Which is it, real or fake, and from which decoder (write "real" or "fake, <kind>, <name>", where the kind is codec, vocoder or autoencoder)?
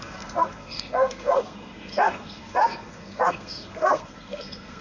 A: fake, codec, SNAC